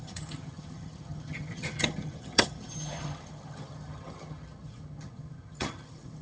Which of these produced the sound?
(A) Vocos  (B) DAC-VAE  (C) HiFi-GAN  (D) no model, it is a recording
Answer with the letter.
C